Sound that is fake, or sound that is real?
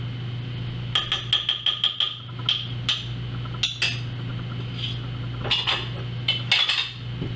real